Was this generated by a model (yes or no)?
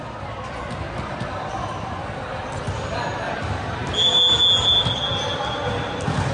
no